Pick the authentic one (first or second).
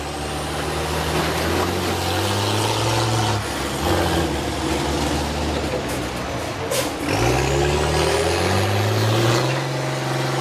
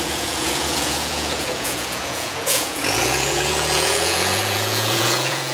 first